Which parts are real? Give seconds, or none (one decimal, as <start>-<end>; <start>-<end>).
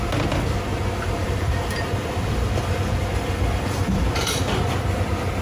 0.0-1.2; 4.4-5.4